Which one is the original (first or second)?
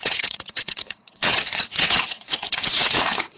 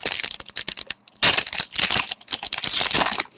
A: second